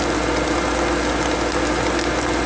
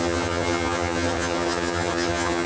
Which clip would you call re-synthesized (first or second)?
second